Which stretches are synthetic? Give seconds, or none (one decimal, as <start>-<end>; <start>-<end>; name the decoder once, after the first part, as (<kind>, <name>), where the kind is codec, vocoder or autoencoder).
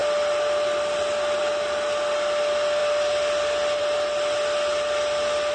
none